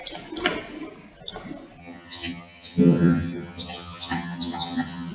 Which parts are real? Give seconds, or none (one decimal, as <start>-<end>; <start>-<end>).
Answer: 0.0-1.8